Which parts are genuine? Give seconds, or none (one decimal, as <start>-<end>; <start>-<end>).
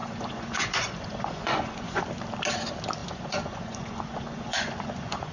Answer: 2.0-3.0